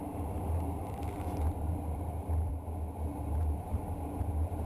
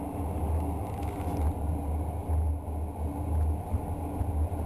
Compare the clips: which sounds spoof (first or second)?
first